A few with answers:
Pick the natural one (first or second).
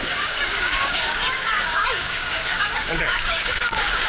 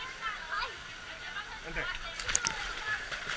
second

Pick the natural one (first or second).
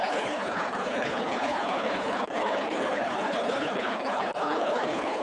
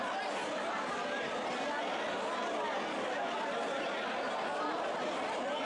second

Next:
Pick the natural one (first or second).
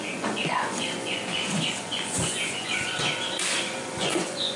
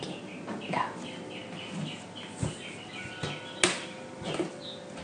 second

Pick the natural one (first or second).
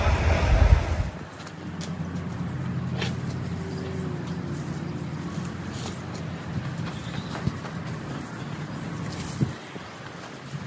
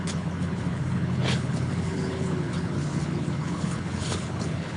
first